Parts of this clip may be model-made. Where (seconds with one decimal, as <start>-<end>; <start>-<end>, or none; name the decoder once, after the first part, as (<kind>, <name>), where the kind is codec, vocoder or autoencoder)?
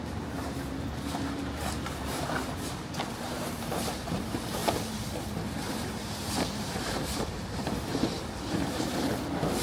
0.0-4.6 (vocoder, BigVGAN v2); 5.2-9.6